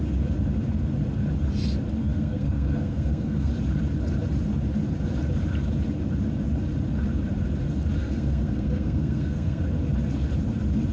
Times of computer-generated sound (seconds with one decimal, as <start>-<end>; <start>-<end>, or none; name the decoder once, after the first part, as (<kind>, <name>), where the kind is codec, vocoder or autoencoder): 2.0-3.5 (codec, SNAC); 8.0-9.6